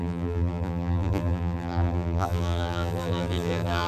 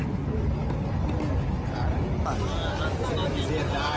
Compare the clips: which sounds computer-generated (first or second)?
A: first